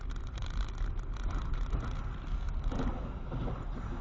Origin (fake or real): real